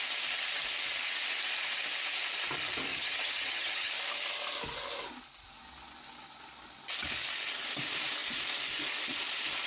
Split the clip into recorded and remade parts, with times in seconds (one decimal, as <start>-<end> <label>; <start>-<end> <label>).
0.0-2.9 recorded; 2.9-3.9 remade; 3.9-9.7 recorded